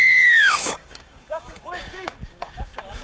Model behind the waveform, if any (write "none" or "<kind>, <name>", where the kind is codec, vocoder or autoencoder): codec, DAC